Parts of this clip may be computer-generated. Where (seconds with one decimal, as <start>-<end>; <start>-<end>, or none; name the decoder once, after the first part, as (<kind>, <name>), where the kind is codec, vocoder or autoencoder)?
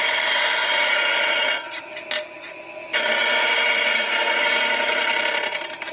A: 0.6-1.8 (vocoder, Vocos); 3.4-4.4